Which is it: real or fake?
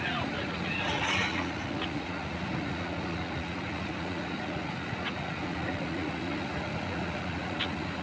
fake